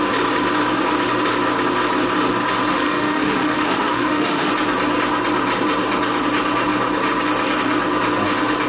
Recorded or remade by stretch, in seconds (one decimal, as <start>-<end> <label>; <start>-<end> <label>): 0.0-2.7 recorded; 2.7-4.5 remade; 4.5-8.7 recorded